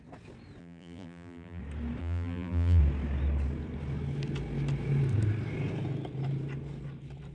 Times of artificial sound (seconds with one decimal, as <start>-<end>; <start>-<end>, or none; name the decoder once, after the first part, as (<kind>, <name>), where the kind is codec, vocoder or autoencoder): 0.6-1.6 (vocoder, BigVGAN v2); 2.0-2.8